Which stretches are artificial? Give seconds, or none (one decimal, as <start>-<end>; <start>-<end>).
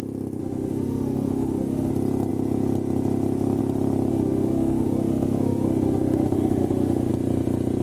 0.4-1.9; 4.1-7.1